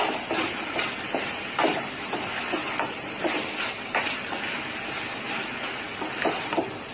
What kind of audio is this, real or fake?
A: real